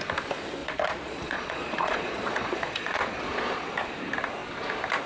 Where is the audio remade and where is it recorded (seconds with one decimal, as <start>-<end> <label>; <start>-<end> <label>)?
0.0-0.6 recorded; 0.6-3.7 remade; 3.7-5.1 recorded

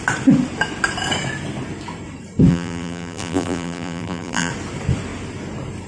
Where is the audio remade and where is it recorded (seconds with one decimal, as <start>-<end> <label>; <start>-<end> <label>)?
0.0-2.5 recorded; 2.5-4.5 remade; 4.5-5.9 recorded

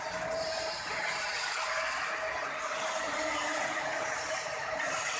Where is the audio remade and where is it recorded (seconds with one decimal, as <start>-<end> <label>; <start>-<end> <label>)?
0.0-1.3 remade; 1.3-3.0 recorded; 3.0-5.2 remade

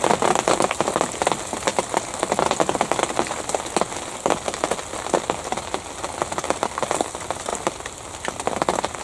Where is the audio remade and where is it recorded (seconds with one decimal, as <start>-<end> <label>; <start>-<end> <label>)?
0.0-9.0 recorded

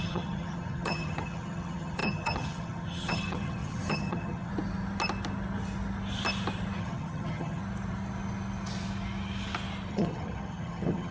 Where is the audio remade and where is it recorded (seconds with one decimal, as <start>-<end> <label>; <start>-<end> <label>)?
0.0-4.5 remade; 4.5-6.8 recorded; 6.8-7.6 remade; 7.6-9.9 recorded; 9.9-11.1 remade

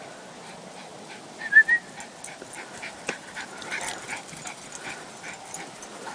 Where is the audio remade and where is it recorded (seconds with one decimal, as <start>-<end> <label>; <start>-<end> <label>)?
0.0-6.1 recorded

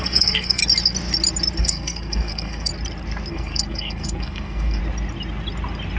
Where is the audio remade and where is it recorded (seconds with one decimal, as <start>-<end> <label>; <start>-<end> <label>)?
0.0-0.6 remade; 0.6-1.6 recorded; 1.6-2.7 remade; 2.7-3.3 recorded; 3.3-4.8 remade; 4.8-6.0 recorded

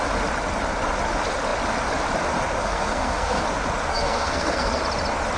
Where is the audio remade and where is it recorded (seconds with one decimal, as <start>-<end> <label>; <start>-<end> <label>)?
0.0-2.6 recorded; 2.6-3.4 remade; 3.4-3.9 recorded; 3.9-4.8 remade; 4.8-5.4 recorded